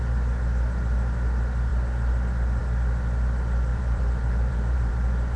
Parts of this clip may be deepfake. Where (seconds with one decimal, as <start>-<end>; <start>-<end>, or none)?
3.7-4.9